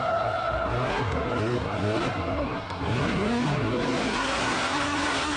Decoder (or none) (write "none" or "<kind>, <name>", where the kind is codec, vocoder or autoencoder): codec, SNAC